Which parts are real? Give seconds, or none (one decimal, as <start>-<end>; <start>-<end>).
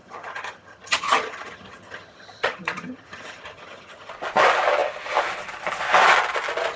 4.1-6.8